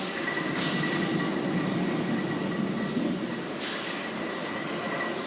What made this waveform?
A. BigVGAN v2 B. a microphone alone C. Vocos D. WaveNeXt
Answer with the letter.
B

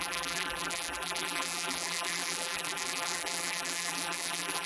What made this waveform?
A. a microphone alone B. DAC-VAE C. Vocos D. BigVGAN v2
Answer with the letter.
D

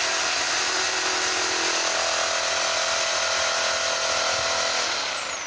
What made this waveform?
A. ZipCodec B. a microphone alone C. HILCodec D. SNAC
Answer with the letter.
B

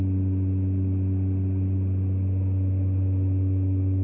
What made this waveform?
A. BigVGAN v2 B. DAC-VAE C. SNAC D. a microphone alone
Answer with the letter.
D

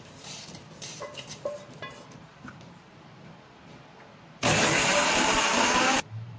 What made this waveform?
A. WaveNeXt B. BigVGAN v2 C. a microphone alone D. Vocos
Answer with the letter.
B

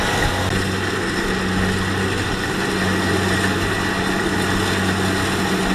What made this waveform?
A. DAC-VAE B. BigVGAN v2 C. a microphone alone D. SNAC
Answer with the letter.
C